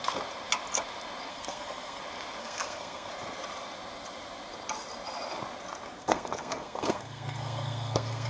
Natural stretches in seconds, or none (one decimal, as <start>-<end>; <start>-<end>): 0.0-1.3; 2.0-2.4; 3.1-6.0